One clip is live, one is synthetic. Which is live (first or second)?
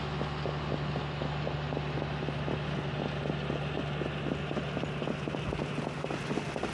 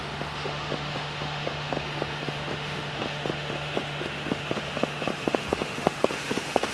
first